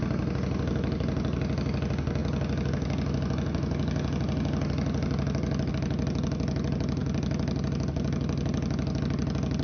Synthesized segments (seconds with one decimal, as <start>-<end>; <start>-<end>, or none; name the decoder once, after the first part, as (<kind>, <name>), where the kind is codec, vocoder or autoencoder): none